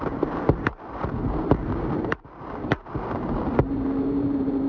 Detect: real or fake fake